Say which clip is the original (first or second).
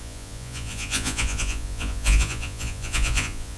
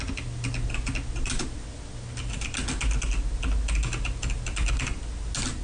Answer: second